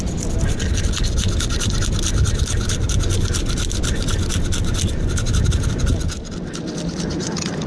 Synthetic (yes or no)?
no